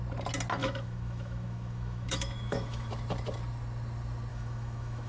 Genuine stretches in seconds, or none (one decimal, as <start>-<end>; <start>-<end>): 0.0-0.6; 2.9-4.3